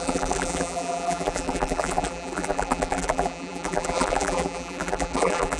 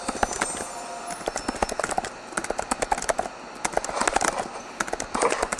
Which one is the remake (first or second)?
first